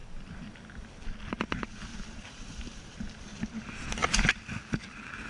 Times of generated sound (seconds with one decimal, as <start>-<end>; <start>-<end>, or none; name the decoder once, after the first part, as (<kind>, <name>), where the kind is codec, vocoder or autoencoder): 0.0-0.5 (vocoder, BigVGAN v2); 1.9-3.2